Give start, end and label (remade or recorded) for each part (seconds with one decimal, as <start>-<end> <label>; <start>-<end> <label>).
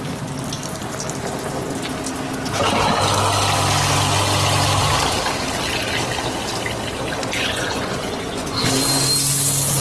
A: 0.0-7.2 recorded; 7.2-8.6 remade; 8.6-9.8 recorded